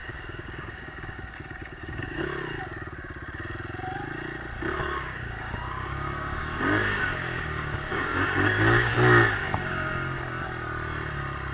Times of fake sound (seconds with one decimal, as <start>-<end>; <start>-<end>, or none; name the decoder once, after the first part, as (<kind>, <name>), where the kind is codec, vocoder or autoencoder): 0.0-2.2 (codec, DAC); 4.8-8.9; 9.4-10.4